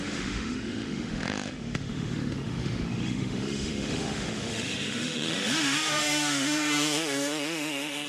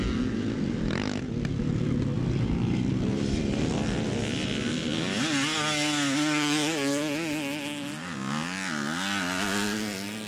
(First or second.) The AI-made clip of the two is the first